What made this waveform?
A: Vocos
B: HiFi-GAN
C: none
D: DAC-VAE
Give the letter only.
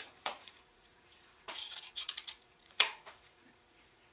A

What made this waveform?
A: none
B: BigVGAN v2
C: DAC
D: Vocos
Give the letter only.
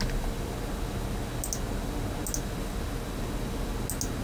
A